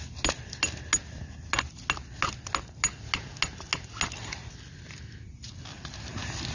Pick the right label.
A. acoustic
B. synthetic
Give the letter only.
A